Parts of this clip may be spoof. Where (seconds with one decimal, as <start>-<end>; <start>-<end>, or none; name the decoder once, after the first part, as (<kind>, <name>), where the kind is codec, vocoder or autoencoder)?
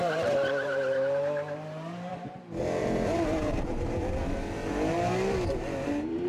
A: 0.0-2.1 (vocoder, BigVGAN v2); 2.6-6.3